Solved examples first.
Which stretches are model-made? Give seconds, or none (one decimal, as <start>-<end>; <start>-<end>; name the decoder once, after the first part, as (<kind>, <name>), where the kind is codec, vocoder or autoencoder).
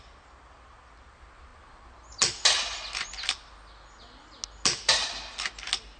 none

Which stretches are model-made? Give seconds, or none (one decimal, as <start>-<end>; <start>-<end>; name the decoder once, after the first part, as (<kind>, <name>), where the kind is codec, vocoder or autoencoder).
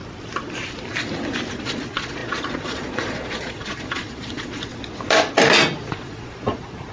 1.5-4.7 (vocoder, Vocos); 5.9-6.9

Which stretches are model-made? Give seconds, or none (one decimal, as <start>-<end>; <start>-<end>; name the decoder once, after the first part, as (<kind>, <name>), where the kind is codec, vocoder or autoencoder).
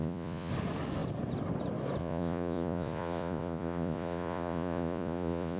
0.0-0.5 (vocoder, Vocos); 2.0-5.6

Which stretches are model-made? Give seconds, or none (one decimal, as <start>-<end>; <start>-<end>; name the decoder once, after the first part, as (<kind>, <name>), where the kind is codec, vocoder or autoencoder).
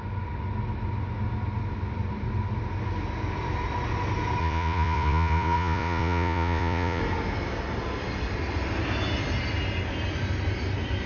4.4-7.0 (vocoder, Vocos)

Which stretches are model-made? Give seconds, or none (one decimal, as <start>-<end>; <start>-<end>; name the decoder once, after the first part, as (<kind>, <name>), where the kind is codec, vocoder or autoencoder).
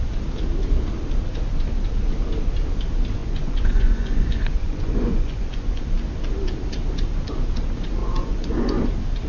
3.2-5.8 (vocoder, Vocos); 8.0-8.8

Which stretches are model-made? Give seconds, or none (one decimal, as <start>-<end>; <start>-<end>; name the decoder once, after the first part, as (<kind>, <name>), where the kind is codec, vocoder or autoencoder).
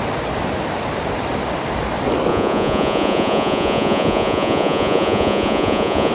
2.3-6.1 (vocoder, Vocos)